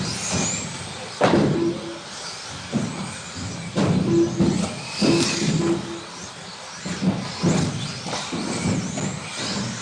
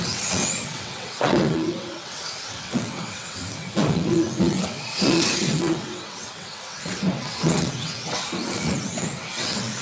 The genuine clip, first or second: first